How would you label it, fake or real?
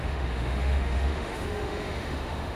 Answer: fake